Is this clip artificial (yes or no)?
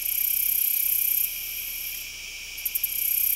no